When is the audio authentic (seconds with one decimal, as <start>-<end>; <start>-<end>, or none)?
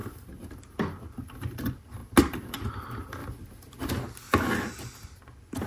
0.5-3.2; 3.9-5.7